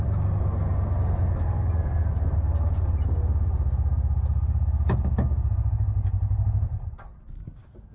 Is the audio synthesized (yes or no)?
no